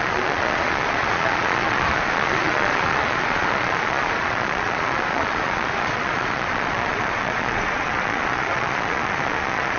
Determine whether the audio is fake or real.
fake